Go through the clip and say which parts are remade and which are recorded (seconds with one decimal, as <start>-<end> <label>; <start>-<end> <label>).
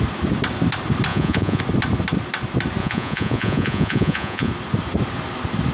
0.0-1.1 recorded; 1.1-1.6 remade; 1.6-2.8 recorded; 2.8-4.5 remade; 4.5-5.7 recorded